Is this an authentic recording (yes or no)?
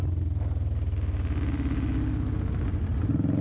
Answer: yes